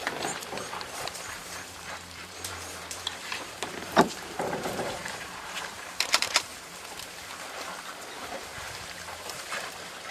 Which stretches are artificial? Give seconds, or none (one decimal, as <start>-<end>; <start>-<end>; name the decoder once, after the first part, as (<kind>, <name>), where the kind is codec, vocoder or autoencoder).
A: 0.0-6.5 (vocoder, BigVGAN v2); 8.1-10.1